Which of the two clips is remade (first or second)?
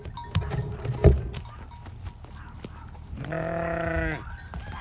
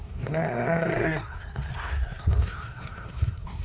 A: second